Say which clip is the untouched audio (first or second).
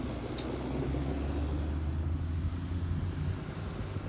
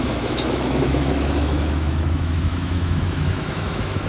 first